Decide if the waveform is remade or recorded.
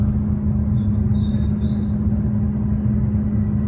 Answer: recorded